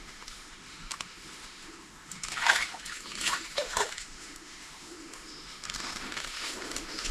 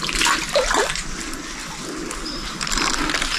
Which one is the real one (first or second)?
second